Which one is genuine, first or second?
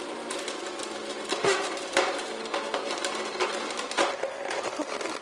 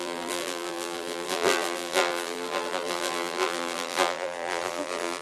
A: first